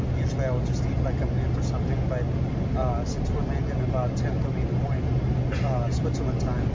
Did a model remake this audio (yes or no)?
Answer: no